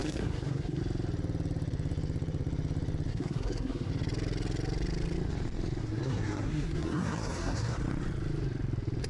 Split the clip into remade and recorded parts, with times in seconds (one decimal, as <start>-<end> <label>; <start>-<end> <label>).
0.0-0.8 remade; 0.8-3.1 recorded; 3.1-3.9 remade; 3.9-5.8 recorded; 5.8-7.8 remade; 7.8-9.1 recorded